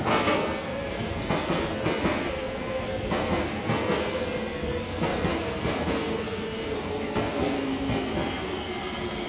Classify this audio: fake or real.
fake